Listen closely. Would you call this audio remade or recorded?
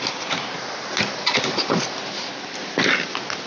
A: recorded